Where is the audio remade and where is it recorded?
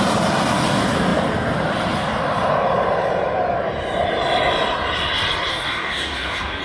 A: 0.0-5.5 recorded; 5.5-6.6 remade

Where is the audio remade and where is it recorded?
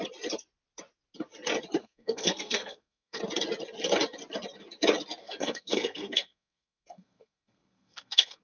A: 0.0-1.8 recorded; 1.8-3.2 remade; 3.2-5.2 recorded; 5.2-8.4 remade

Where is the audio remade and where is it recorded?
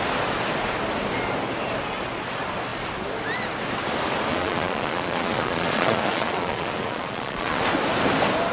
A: 0.0-4.3 recorded; 4.3-7.6 remade; 7.6-8.5 recorded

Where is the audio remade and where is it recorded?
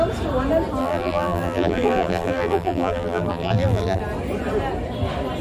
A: 0.0-0.8 recorded; 0.8-4.0 remade; 4.0-5.4 recorded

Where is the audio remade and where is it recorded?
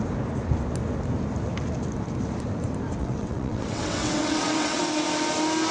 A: 0.0-3.0 recorded; 3.0-4.8 remade; 4.8-5.7 recorded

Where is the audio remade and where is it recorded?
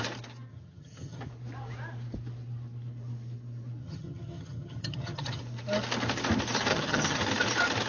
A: 0.0-0.5 recorded; 0.5-1.2 remade; 1.2-3.8 recorded; 3.8-5.4 remade; 5.4-6.7 recorded; 6.7-7.2 remade; 7.2-7.9 recorded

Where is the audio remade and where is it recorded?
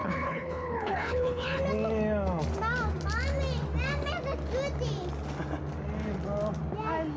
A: 0.0-1.6 remade; 1.6-7.2 recorded